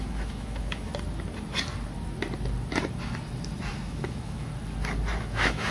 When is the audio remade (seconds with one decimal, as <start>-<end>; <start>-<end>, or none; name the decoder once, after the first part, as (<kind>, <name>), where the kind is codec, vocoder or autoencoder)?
0.0-0.9 (autoencoder, DAC-VAE); 3.7-4.5; 5.2-5.7